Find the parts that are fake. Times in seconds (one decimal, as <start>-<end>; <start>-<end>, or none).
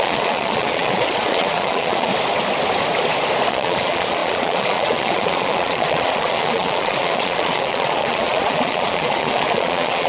0.0-2.1; 3.5-10.1